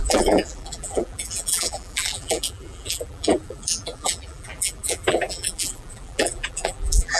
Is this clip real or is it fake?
fake